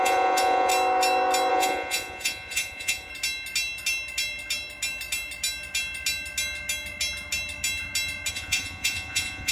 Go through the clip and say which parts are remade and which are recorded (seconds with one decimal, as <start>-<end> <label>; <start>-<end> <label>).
0.0-0.7 remade; 0.7-1.5 recorded; 1.5-3.1 remade; 3.1-8.3 recorded; 8.3-9.5 remade